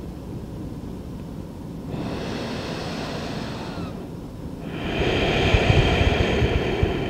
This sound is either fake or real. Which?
fake